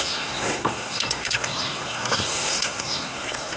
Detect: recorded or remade remade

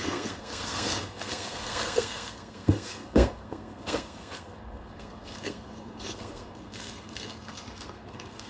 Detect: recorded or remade remade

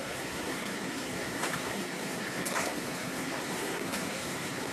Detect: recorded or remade remade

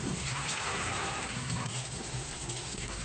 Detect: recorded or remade remade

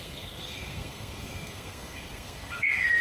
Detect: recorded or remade remade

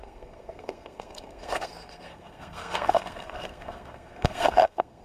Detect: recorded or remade remade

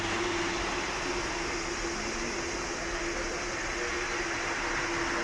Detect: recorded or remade recorded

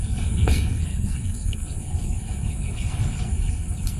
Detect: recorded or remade remade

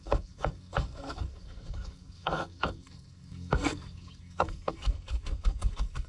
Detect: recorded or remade remade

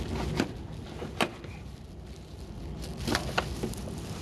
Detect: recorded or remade recorded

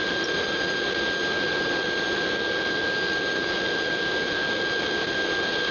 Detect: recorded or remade recorded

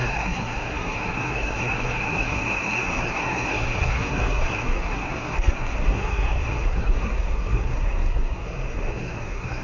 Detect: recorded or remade remade